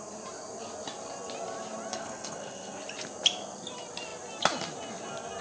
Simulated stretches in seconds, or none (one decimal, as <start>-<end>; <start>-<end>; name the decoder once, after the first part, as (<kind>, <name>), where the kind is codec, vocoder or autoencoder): 1.9-2.8 (codec, SNAC)